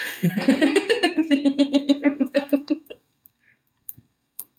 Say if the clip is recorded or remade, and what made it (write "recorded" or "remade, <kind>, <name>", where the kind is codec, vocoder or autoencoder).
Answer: remade, codec, SNAC